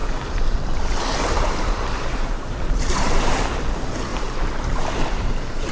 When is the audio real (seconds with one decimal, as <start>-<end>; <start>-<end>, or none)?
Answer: 3.4-4.1